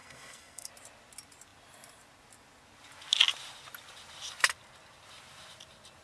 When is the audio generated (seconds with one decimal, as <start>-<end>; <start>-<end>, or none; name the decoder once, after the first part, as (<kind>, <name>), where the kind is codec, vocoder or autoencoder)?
0.0-0.7 (codec, SNAC)